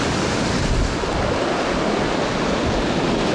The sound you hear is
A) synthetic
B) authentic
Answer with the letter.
B